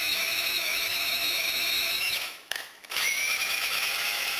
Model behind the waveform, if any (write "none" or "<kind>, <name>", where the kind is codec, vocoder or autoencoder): autoencoder, DAC-VAE